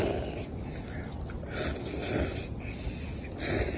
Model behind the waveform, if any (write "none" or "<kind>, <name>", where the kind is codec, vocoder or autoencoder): none